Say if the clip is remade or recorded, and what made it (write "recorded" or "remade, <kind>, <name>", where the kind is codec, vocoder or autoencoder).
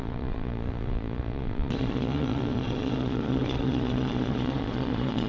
remade, vocoder, Vocos